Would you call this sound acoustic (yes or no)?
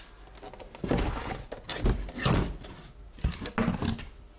yes